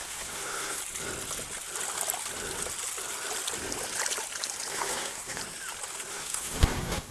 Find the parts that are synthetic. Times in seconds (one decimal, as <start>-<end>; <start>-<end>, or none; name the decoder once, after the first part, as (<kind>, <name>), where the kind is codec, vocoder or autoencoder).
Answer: 0.0-0.8 (codec, SNAC); 4.7-5.4; 6.1-7.1